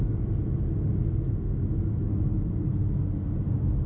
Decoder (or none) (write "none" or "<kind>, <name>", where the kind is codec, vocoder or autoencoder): none